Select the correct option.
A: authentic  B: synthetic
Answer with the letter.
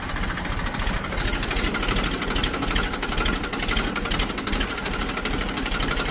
A